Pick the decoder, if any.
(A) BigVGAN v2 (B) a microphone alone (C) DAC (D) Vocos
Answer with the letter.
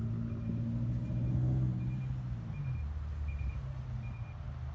B